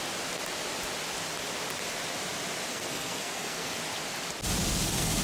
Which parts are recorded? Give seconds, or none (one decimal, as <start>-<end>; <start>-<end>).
0.0-2.7; 3.8-4.6